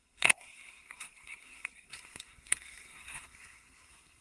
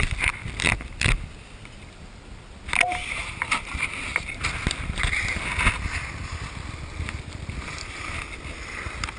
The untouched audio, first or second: second